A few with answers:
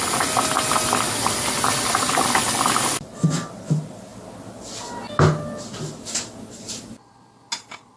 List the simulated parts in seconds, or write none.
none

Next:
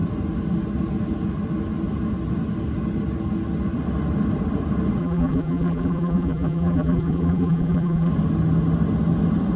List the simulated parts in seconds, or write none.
5.0-8.1 (vocoder, BigVGAN v2)

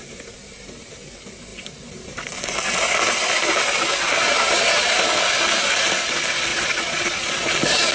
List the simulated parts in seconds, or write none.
6.5-7.5 (vocoder, Vocos)

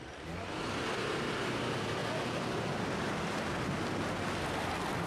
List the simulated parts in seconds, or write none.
0.0-2.0 (vocoder, BigVGAN v2); 4.4-5.1

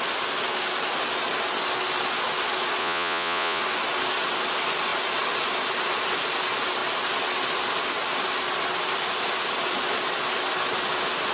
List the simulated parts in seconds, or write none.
2.8-3.6 (vocoder, Vocos)